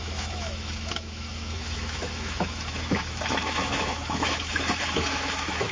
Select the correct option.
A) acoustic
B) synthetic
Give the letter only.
B